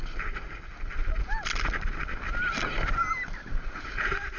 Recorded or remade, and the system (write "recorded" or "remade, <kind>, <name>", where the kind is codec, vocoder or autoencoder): recorded